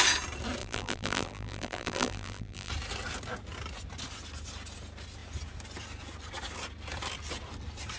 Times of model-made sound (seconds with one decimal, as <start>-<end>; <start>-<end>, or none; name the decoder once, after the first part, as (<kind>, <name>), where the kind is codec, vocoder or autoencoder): 0.6-2.7 (vocoder, BigVGAN v2)